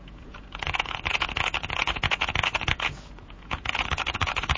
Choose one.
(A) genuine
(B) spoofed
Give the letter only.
B